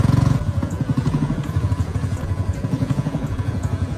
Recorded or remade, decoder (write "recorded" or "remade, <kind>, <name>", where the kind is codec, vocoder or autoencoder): remade, vocoder, Vocos